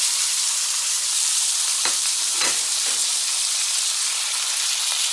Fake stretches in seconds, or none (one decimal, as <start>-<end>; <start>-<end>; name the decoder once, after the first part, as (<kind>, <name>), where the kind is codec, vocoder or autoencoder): 0.0-3.0 (vocoder, BigVGAN v2)